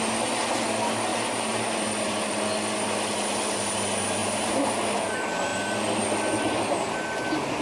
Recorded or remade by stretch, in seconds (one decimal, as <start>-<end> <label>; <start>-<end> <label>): 0.0-1.1 recorded; 1.1-2.3 remade; 2.3-4.2 recorded; 4.2-5.0 remade; 5.0-7.6 recorded